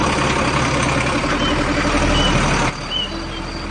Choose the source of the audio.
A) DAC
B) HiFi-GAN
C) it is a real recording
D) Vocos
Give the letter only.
C